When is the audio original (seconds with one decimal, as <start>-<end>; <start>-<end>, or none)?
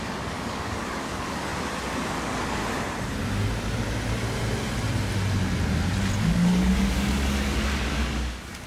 1.5-2.2; 2.6-6.2